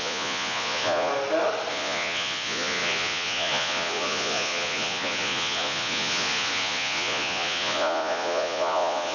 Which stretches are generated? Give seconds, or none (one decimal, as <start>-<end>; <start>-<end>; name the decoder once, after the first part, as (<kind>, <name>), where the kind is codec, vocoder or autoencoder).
0.0-1.1 (vocoder, Vocos); 1.7-9.1